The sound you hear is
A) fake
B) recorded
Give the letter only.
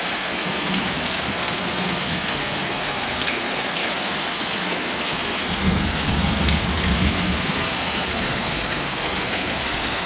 A